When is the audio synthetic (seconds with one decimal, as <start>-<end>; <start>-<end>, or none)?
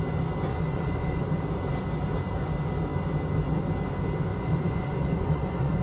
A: 0.5-1.2; 4.3-5.8